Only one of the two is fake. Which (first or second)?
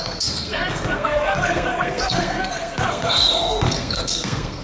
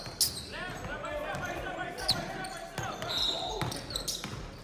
first